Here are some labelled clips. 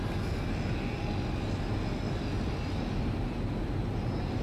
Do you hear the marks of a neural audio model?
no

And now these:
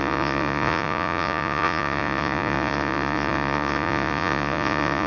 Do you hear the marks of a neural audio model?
yes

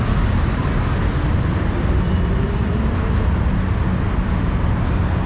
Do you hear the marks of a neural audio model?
no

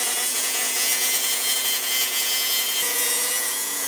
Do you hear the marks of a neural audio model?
yes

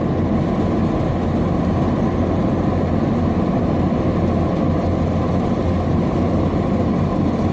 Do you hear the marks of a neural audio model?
no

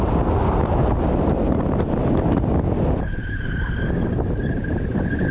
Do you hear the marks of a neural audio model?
no